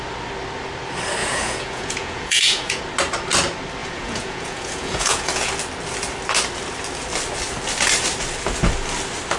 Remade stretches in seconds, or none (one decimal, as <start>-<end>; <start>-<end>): 1.2-2.8; 3.8-5.5